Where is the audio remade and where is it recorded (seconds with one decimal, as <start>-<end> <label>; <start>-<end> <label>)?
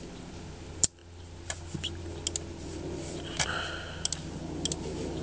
0.0-5.2 recorded